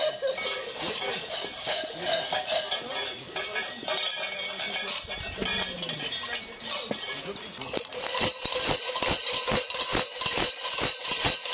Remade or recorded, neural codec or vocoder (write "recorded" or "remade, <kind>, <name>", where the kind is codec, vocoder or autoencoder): recorded